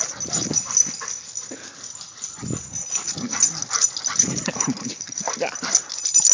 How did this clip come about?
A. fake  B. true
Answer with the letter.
B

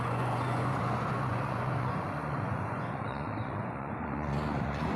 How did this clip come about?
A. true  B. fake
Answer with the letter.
B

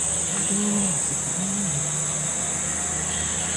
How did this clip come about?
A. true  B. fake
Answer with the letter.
A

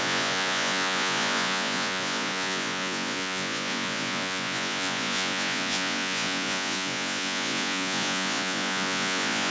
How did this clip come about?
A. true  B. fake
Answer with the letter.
B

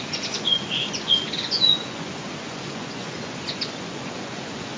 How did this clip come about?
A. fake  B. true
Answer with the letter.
A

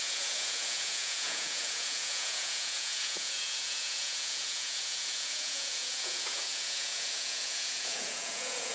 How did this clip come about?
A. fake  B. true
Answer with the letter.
A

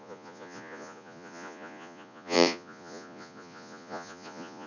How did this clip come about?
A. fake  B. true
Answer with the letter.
A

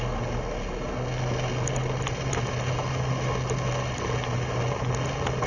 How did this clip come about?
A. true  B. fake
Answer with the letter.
A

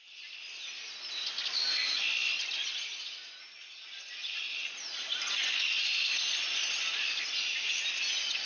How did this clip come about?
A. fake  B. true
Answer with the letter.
B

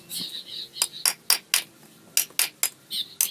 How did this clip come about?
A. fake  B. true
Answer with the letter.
B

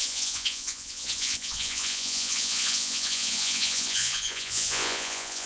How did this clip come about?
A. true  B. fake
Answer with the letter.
B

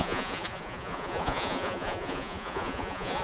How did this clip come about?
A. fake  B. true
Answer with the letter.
A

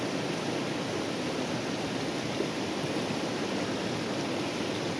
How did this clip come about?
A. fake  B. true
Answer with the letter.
B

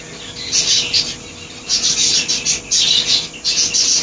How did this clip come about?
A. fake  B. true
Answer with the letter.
B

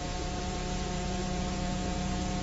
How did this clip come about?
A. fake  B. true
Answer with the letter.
A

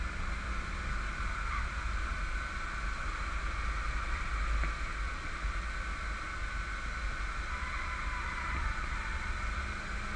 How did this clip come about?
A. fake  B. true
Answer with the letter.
B